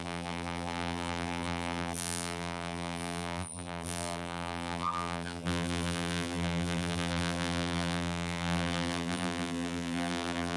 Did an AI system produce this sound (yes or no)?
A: yes